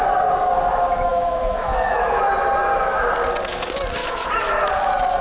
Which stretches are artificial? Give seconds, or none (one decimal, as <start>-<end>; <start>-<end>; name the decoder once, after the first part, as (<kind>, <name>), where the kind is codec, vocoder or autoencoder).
1.1-2.2 (autoencoder, DAC-VAE); 2.6-3.1; 4.0-4.7